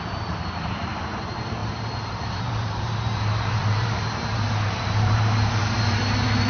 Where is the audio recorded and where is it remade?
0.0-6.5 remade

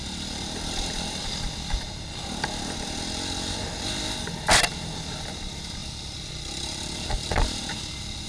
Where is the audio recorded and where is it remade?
0.0-5.8 recorded; 5.8-7.6 remade; 7.6-8.3 recorded

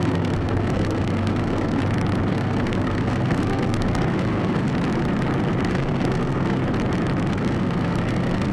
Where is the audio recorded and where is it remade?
0.0-1.8 remade; 1.8-2.3 recorded; 2.3-4.7 remade; 4.7-5.7 recorded; 5.7-6.6 remade; 6.6-7.3 recorded; 7.3-8.5 remade

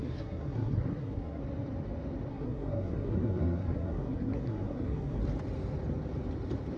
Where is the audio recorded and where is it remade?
0.0-1.4 remade; 1.4-2.3 recorded; 2.3-5.2 remade; 5.2-6.8 recorded

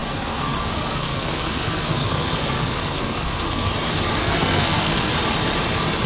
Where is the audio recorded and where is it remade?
0.0-3.7 remade; 3.7-4.2 recorded; 4.2-5.1 remade; 5.1-6.1 recorded

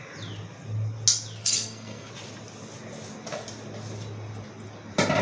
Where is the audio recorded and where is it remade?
0.0-1.4 recorded; 1.4-2.1 remade; 2.1-5.2 recorded